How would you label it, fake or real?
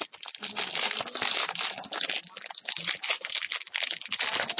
real